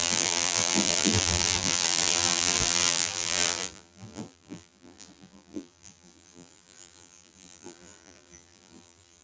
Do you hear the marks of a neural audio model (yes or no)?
yes